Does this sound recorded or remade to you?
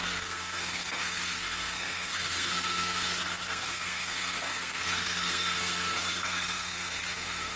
remade